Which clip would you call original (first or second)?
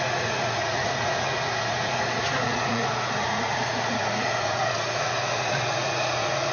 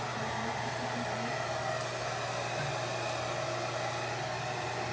second